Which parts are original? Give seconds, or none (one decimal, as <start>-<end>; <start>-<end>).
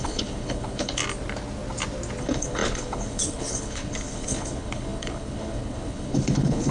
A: 1.0-2.2